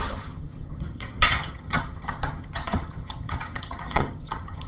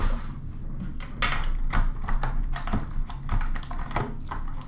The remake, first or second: first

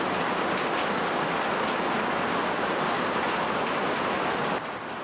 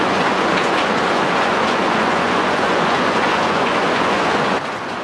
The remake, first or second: second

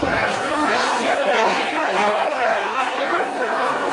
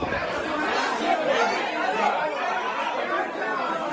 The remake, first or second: first